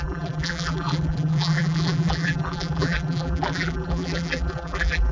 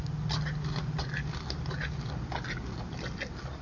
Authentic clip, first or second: second